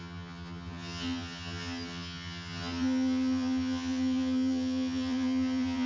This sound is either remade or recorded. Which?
remade